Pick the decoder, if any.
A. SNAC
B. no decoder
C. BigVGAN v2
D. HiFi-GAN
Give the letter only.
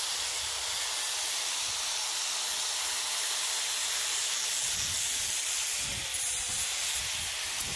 B